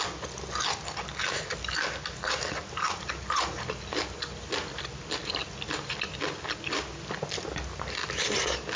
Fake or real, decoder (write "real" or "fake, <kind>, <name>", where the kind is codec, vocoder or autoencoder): real